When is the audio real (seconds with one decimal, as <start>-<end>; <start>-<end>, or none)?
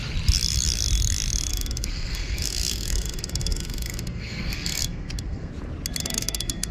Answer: 0.0-1.5; 5.5-6.0